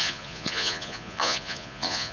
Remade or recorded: remade